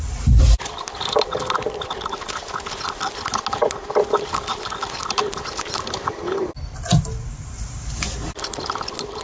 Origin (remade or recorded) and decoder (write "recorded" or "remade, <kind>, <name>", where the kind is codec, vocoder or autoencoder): recorded